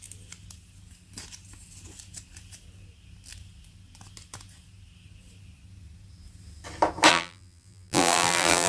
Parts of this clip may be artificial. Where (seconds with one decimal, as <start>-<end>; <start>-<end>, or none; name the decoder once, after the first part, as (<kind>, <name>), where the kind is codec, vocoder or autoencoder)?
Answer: 7.1-8.7 (vocoder, BigVGAN v2)